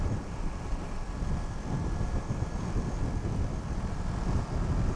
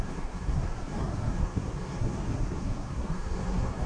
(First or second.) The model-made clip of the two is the second